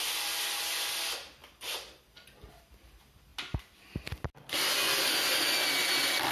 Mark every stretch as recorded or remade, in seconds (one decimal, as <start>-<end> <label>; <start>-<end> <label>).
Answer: 0.0-3.3 recorded; 3.3-4.2 remade; 4.2-6.3 recorded